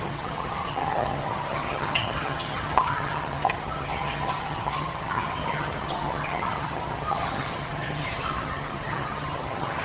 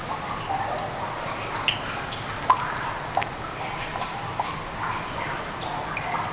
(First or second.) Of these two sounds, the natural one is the second